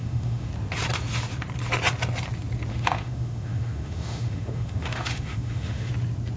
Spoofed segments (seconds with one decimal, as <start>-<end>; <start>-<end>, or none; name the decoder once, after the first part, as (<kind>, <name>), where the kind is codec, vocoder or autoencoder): 0.0-0.5 (autoencoder, DAC-VAE); 2.7-5.9